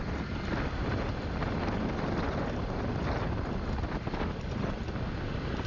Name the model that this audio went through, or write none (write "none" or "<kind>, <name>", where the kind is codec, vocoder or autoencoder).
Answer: none